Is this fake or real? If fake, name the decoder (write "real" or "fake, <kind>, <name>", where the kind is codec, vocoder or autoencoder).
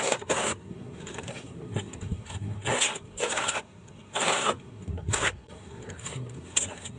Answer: fake, codec, SNAC